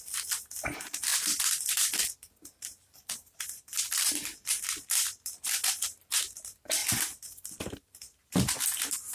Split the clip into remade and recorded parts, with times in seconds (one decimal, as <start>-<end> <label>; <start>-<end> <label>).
0.0-1.1 recorded; 1.1-4.6 remade; 4.6-6.8 recorded; 6.8-8.0 remade; 8.0-9.1 recorded